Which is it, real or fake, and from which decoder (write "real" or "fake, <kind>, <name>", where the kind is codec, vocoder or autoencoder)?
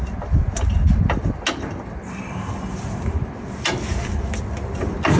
real